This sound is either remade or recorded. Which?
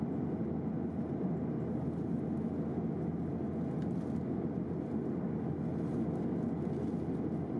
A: recorded